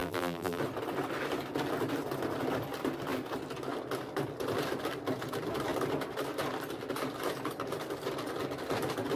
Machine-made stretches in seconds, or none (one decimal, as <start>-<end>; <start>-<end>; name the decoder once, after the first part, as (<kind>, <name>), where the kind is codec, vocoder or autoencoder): 0.0-0.6 (vocoder, BigVGAN v2)